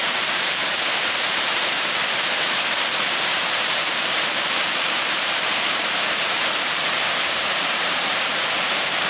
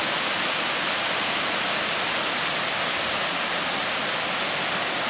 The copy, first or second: first